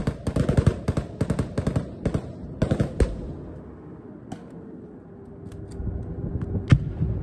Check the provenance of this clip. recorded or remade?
recorded